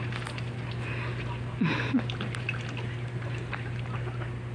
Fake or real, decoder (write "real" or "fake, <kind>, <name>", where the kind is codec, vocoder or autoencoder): real